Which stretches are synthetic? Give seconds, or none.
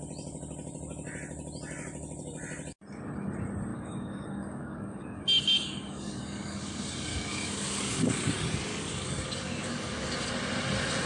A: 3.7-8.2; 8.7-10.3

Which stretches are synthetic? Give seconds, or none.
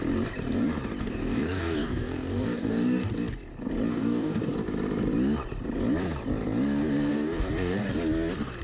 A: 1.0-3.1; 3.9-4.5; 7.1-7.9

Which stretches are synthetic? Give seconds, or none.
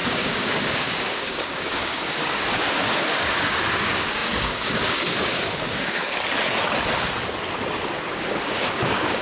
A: 0.0-6.0; 8.1-9.2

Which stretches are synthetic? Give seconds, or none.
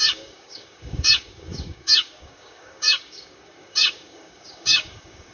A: 0.0-5.3